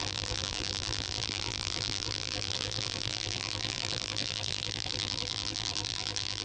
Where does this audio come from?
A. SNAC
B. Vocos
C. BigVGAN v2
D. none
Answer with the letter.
C